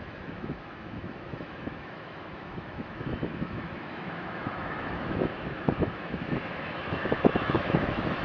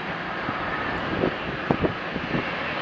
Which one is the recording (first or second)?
second